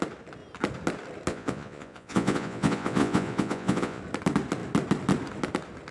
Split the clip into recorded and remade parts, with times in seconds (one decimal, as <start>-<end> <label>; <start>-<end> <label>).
0.0-1.3 recorded; 1.3-4.0 remade; 4.0-5.9 recorded